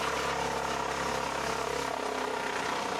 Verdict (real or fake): real